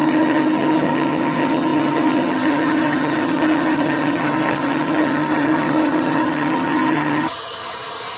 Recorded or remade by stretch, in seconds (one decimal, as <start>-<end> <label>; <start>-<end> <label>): 0.0-8.2 remade